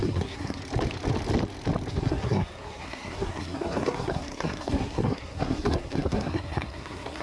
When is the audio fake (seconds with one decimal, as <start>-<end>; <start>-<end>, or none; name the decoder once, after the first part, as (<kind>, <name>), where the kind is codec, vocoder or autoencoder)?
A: 0.0-0.6 (codec, SNAC); 1.9-7.2